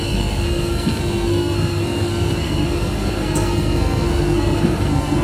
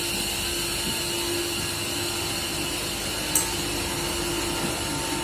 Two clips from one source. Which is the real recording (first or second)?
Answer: second